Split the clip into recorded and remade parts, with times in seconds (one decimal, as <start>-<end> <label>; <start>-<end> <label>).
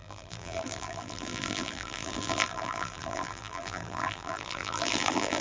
0.0-5.4 remade